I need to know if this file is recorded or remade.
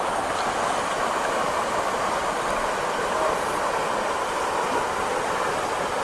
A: recorded